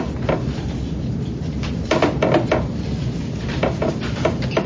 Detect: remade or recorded remade